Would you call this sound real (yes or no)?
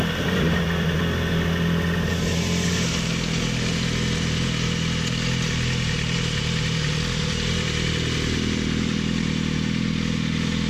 yes